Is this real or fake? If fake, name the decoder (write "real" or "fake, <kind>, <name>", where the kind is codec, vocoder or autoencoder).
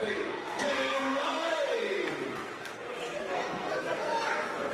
fake, codec, SNAC